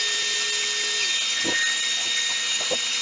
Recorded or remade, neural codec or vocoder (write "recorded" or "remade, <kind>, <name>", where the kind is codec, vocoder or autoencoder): recorded